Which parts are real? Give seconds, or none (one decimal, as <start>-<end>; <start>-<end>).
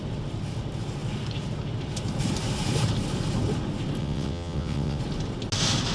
0.0-4.0; 5.0-5.9